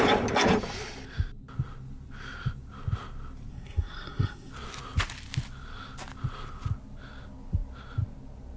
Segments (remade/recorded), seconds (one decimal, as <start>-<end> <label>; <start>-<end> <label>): 0.0-3.5 recorded; 3.5-4.5 remade; 4.5-8.6 recorded